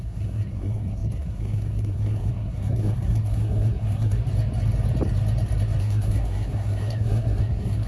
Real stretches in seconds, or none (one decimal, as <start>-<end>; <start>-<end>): 4.2-5.8